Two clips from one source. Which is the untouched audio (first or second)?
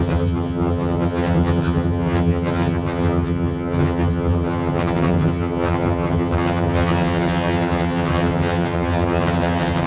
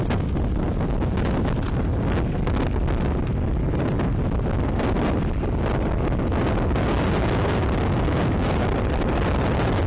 second